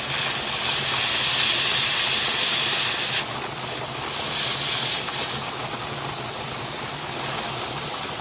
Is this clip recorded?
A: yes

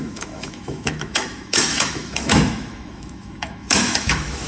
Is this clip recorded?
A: no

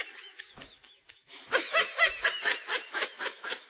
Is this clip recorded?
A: no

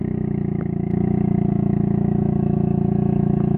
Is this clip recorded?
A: no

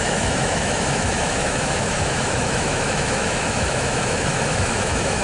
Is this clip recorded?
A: no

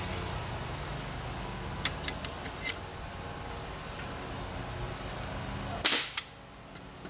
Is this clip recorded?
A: yes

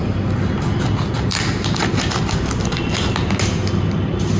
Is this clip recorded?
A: yes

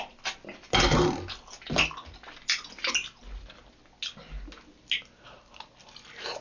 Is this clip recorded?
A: yes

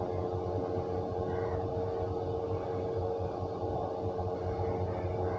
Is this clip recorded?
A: yes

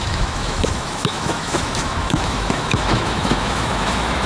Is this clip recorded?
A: no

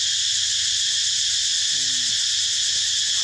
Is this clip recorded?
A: yes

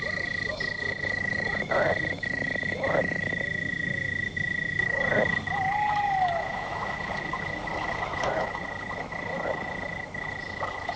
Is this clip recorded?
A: no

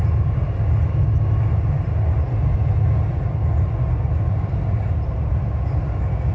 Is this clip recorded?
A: yes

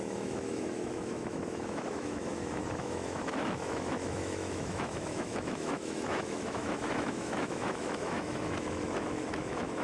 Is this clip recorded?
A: no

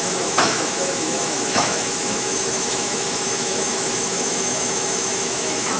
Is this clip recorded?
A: no